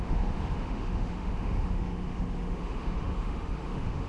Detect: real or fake fake